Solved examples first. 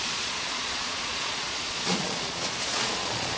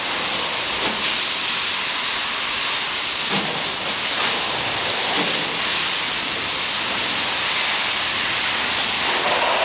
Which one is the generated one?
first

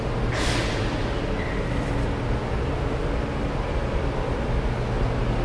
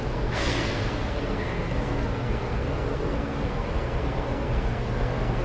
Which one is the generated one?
second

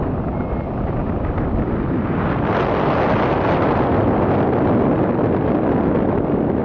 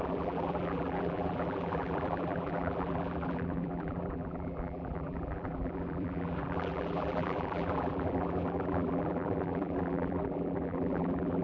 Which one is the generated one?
second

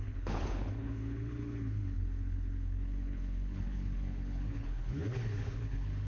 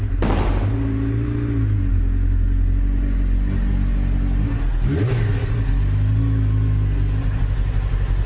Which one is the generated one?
first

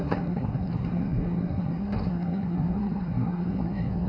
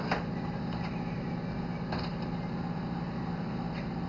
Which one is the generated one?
first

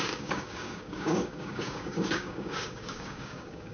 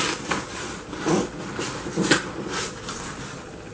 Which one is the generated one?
first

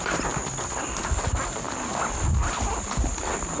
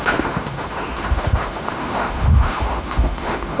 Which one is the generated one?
second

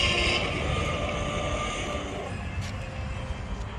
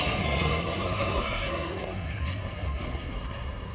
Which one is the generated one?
second